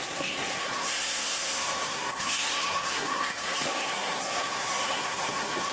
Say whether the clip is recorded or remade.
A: remade